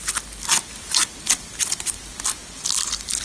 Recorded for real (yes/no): yes